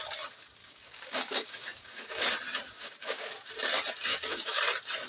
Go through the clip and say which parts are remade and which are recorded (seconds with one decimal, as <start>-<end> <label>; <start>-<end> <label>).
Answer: 0.0-0.6 recorded; 0.6-2.3 remade; 2.3-2.8 recorded; 2.8-3.3 remade; 3.3-4.1 recorded; 4.1-4.6 remade; 4.6-5.1 recorded